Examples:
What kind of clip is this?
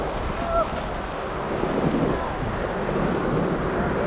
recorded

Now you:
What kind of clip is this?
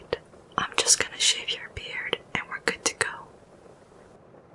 recorded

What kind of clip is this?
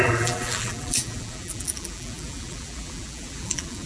remade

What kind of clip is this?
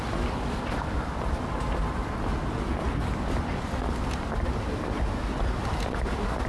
recorded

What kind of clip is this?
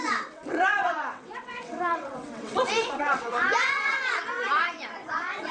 remade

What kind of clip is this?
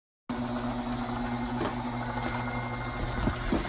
recorded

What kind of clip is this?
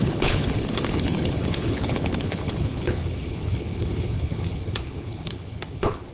remade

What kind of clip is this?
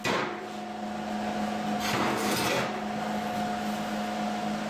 recorded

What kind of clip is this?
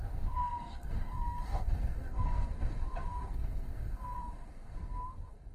remade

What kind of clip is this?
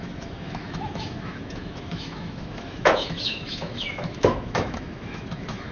remade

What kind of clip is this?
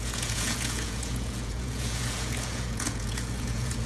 remade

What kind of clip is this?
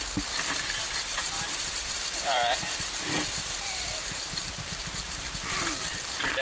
remade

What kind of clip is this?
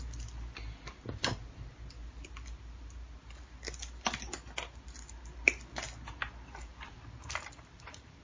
recorded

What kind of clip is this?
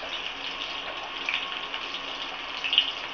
recorded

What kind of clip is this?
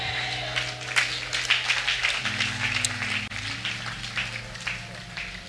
recorded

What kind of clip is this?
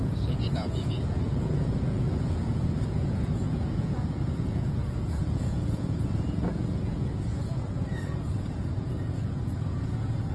remade